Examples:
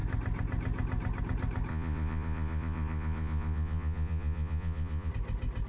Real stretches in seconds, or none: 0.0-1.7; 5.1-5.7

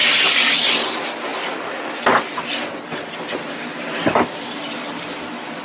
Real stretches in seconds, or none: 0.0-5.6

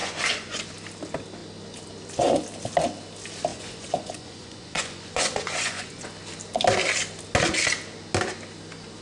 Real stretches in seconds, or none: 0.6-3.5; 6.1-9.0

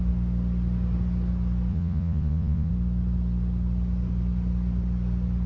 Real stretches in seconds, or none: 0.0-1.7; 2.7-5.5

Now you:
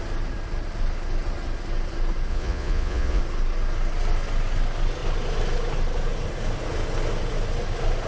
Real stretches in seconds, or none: 0.0-2.3; 3.2-8.1